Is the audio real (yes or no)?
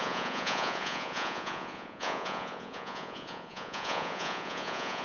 no